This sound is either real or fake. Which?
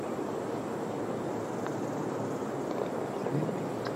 real